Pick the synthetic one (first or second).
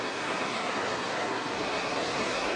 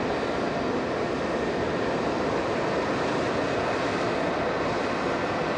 first